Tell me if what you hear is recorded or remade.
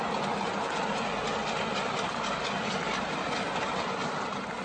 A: recorded